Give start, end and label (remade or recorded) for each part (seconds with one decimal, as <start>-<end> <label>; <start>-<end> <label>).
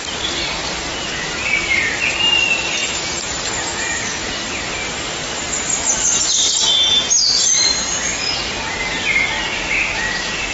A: 0.0-10.5 recorded